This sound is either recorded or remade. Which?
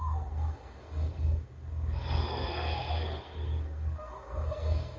remade